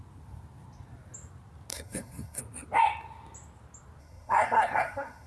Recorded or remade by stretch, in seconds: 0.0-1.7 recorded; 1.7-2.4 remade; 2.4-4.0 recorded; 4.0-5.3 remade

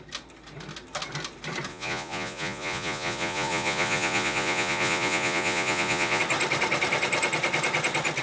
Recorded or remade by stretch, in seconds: 0.0-1.7 recorded; 1.7-6.2 remade; 6.2-8.2 recorded

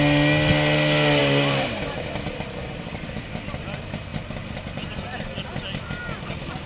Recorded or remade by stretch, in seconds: 0.0-6.7 recorded

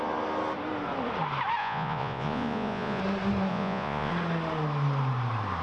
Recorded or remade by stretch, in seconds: 0.0-1.6 recorded; 1.6-3.0 remade; 3.0-3.5 recorded; 3.5-4.1 remade; 4.1-5.6 recorded

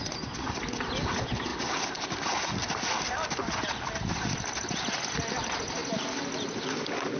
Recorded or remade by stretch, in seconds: 0.0-7.2 recorded